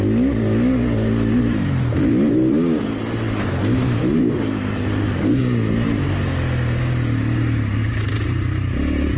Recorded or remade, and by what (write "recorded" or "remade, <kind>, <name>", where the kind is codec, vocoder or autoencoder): recorded